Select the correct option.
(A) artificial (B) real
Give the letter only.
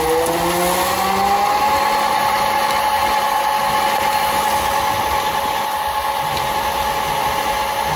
B